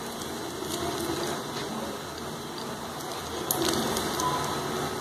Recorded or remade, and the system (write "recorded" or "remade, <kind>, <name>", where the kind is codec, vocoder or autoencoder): recorded